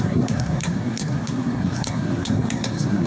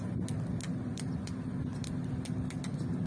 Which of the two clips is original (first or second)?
second